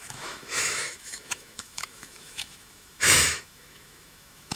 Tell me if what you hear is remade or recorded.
remade